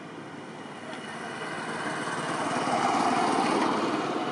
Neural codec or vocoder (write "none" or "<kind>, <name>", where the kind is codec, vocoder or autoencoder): none